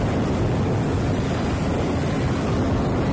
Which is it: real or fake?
real